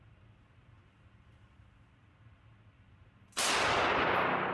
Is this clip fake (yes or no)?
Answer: no